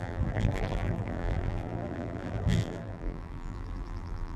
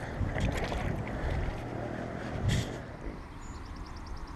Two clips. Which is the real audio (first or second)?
second